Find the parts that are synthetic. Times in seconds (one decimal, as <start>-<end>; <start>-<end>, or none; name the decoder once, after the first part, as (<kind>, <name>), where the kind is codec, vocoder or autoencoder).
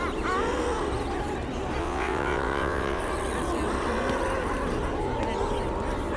1.8-3.0 (vocoder, WaveNeXt)